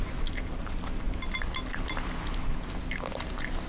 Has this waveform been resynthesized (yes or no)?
no